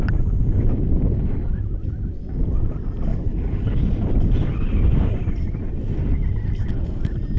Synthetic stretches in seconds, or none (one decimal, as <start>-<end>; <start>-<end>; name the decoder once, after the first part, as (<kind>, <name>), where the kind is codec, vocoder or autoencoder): 3.1-3.8 (codec, HILCodec)